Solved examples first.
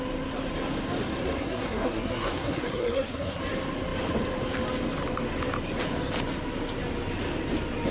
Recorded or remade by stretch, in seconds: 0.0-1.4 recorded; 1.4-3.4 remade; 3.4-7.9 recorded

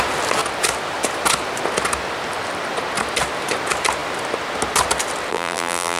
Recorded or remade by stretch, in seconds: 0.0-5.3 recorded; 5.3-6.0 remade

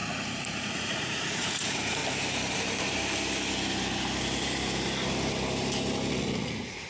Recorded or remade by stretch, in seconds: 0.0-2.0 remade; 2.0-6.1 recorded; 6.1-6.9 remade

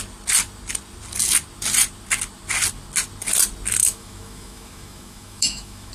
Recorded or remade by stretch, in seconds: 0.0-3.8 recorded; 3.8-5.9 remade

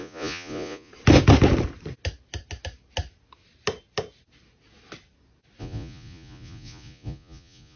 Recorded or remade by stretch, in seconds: 0.0-0.9 remade; 0.9-5.6 recorded; 5.6-7.8 remade

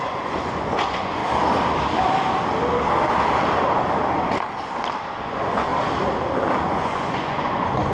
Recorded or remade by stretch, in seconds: 0.0-1.2 remade; 1.2-5.2 recorded; 5.2-5.7 remade; 5.7-6.6 recorded; 6.6-7.9 remade

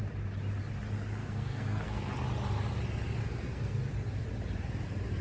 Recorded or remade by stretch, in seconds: 0.0-1.2 recorded; 1.2-2.1 remade; 2.1-3.2 recorded; 3.2-3.9 remade; 3.9-5.2 recorded

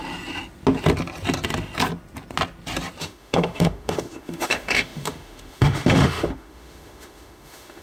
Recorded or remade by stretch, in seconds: 0.0-3.0 recorded; 3.0-7.8 remade